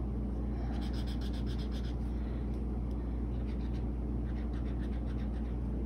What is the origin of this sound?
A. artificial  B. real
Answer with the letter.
B